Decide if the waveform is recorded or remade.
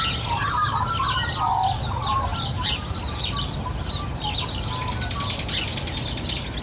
recorded